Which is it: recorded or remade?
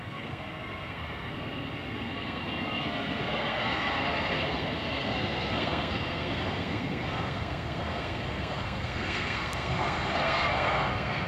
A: remade